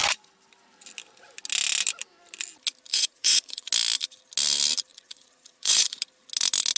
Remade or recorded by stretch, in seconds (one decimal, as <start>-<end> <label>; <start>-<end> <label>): 0.0-2.9 recorded; 2.9-3.7 remade; 3.7-4.9 recorded; 4.9-6.0 remade; 6.0-6.8 recorded

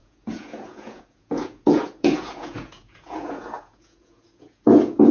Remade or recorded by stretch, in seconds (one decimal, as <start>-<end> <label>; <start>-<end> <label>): 0.0-5.1 remade

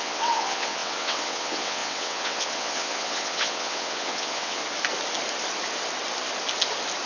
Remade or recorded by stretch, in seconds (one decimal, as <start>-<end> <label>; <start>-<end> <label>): 0.0-4.6 remade; 4.6-7.1 recorded

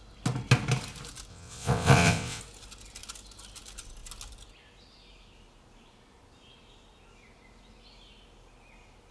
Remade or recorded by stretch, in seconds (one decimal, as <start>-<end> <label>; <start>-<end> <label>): 0.0-1.3 recorded; 1.3-2.4 remade; 2.4-9.1 recorded

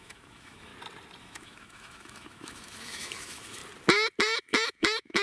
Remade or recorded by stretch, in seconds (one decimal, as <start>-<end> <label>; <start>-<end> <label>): 0.0-0.7 remade; 0.7-1.2 recorded; 1.2-3.6 remade; 3.6-4.2 recorded; 4.2-5.2 remade

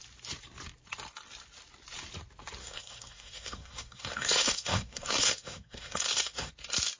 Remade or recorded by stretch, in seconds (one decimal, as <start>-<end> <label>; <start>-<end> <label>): 0.0-2.6 recorded; 2.6-6.5 remade; 6.5-7.0 recorded